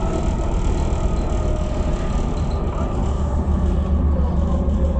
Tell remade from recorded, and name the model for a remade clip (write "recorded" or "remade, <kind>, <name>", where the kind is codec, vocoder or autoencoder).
recorded